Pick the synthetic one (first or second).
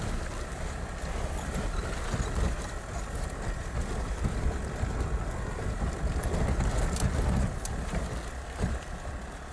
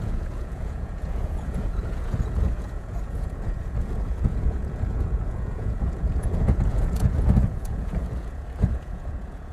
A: second